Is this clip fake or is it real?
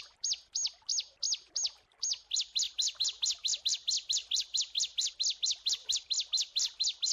real